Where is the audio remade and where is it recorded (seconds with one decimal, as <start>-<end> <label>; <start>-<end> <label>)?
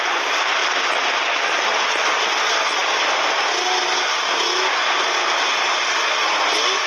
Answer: 0.0-6.9 recorded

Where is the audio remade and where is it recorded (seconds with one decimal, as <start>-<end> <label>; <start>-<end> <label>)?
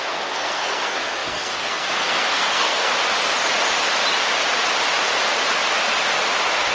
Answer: 0.0-2.9 remade; 2.9-6.7 recorded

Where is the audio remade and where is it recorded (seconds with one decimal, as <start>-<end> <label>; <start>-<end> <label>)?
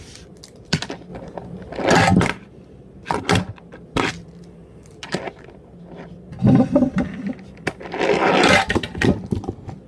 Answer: 0.0-9.9 recorded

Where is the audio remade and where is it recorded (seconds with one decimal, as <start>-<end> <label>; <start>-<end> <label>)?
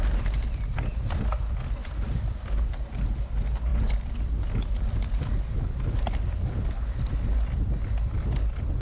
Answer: 0.0-8.8 recorded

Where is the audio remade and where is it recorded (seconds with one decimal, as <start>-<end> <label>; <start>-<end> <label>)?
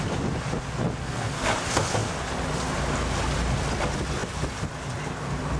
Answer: 0.0-1.0 recorded; 1.0-1.5 remade; 1.5-5.6 recorded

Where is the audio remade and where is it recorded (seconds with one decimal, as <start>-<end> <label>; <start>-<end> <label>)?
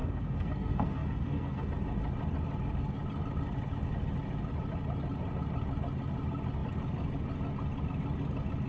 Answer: 0.0-1.7 remade; 1.7-8.7 recorded